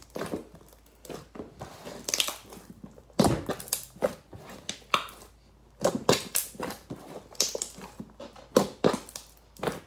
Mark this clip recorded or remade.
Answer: recorded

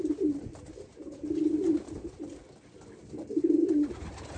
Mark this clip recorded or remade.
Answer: recorded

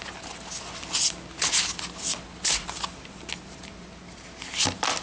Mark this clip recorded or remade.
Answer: recorded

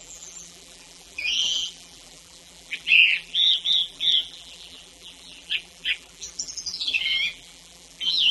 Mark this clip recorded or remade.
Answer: remade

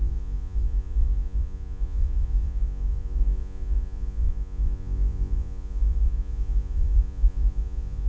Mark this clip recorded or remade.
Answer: remade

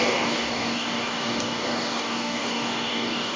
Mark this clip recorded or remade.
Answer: remade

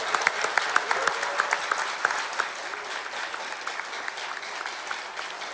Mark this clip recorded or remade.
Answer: recorded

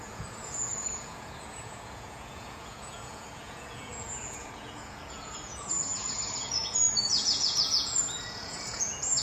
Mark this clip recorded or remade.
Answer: remade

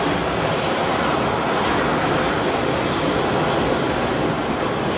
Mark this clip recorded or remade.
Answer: recorded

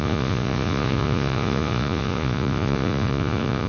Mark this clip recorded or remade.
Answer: remade